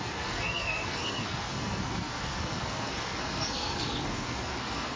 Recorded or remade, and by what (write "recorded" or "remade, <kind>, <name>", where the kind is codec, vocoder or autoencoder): remade, codec, SNAC